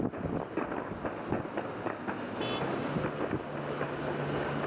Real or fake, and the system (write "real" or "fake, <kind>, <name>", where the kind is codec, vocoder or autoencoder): real